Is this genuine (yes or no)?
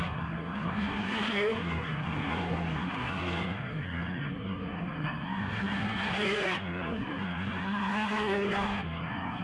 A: no